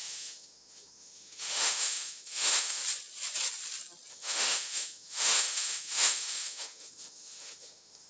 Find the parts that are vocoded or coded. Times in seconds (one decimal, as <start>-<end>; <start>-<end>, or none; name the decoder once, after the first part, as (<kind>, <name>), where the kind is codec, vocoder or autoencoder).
0.0-2.8 (autoencoder, DAC-VAE); 4.1-8.1